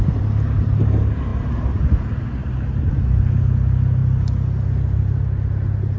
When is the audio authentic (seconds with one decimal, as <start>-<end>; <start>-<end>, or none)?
0.0-6.0